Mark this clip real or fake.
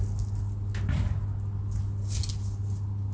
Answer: real